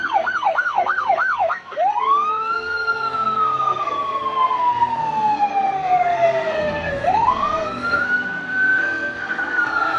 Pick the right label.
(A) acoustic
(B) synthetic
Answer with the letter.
B